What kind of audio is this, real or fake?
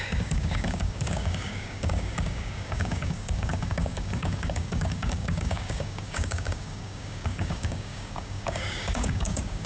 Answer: fake